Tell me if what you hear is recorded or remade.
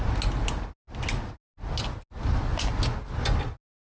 recorded